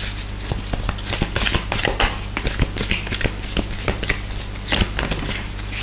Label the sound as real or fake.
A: real